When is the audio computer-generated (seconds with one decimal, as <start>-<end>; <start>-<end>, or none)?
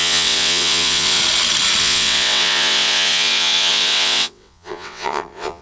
0.0-1.2; 1.8-5.6